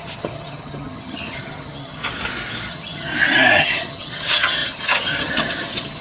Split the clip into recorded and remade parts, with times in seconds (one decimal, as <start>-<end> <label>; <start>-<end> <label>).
0.0-2.0 remade; 2.0-2.7 recorded; 2.7-3.1 remade; 3.1-3.6 recorded; 3.6-6.0 remade